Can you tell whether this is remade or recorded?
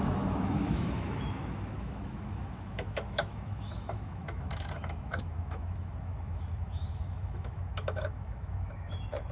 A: remade